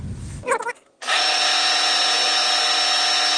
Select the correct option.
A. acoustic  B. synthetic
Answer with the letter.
A